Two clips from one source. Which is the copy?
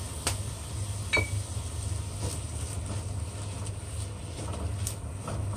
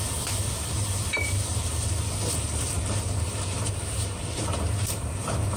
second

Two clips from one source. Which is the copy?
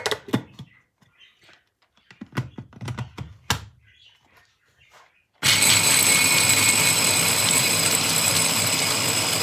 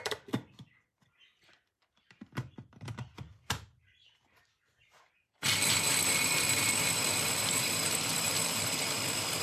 second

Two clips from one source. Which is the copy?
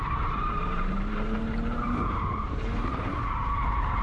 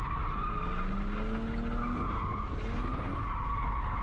first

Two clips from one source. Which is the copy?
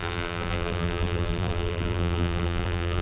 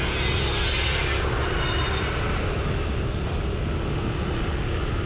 first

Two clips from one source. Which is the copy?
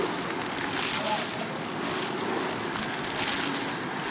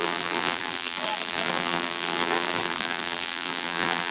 second